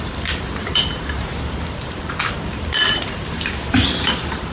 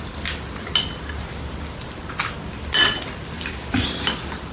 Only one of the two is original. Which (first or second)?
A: second